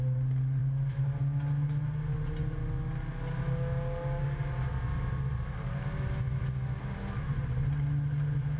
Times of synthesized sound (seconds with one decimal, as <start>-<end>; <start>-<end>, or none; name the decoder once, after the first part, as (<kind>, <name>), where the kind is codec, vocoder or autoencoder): none